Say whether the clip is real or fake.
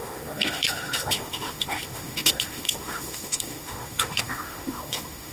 fake